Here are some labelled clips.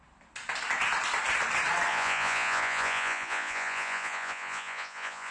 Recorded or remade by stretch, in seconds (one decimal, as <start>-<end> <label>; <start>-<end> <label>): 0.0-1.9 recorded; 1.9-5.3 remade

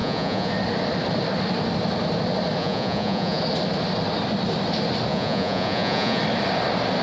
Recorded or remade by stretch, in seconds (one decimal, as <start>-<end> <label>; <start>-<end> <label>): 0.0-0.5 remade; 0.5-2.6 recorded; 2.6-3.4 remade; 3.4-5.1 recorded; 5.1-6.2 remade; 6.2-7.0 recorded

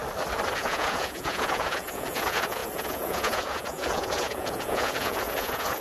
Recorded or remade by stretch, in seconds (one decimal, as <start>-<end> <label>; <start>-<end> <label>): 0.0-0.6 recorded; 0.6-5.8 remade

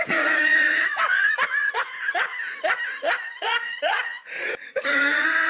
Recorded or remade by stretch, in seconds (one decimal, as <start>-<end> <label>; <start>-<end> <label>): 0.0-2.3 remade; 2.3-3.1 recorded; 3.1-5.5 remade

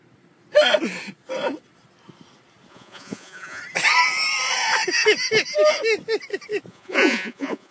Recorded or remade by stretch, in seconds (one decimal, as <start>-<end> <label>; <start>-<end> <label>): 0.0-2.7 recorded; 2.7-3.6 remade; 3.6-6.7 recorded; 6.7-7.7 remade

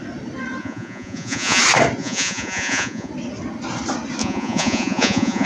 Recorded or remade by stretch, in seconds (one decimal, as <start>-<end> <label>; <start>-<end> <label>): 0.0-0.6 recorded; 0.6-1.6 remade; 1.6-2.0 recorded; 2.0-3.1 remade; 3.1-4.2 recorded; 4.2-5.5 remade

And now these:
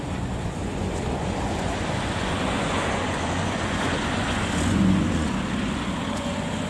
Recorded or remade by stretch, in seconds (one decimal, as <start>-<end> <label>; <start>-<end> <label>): 0.0-6.7 remade